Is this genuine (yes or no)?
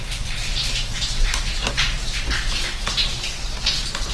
yes